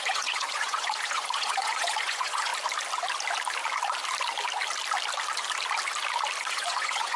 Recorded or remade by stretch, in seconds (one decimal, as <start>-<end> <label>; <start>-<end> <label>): 0.0-2.5 remade; 2.5-6.5 recorded; 6.5-7.2 remade